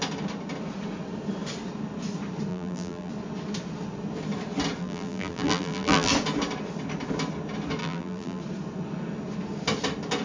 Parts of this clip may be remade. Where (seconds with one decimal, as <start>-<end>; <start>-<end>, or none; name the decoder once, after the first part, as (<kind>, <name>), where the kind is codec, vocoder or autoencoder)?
2.5-3.1 (vocoder, BigVGAN v2); 4.8-6.1; 7.8-8.4

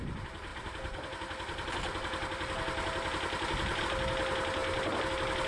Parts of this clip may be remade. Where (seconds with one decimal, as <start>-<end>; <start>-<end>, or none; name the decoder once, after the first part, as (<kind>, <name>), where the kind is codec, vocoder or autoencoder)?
none

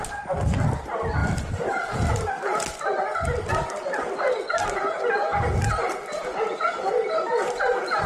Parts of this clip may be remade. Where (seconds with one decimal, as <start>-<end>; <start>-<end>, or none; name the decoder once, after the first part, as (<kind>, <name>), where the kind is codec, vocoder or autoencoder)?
1.2-3.5 (vocoder, BigVGAN v2); 5.3-6.9

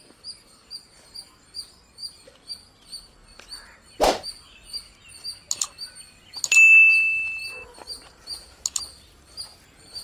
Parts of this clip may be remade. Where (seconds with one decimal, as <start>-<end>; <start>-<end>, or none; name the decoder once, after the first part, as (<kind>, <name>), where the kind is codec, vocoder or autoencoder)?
none

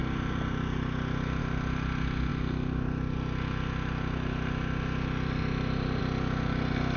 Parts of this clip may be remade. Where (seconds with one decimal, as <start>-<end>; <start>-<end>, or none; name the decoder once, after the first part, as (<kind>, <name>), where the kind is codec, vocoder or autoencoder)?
none

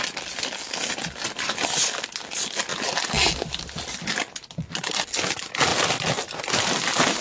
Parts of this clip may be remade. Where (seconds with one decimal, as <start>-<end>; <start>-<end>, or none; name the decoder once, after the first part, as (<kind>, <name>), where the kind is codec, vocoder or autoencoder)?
none

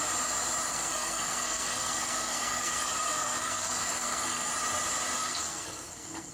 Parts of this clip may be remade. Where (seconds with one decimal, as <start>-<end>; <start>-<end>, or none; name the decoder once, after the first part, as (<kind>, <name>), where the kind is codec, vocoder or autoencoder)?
0.7-4.5 (codec, SNAC); 5.2-6.3

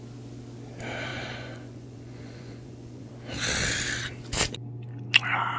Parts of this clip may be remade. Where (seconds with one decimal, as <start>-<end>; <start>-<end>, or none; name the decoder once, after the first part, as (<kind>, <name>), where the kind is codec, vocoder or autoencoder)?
1.1-3.1 (vocoder, Vocos)